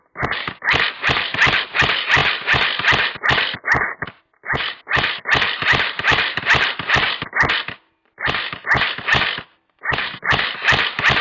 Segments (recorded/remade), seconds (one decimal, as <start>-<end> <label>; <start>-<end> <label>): 0.0-11.2 recorded